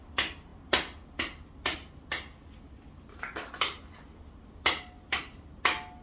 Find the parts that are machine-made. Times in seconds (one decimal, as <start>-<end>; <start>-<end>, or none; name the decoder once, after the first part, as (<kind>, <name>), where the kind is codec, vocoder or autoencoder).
none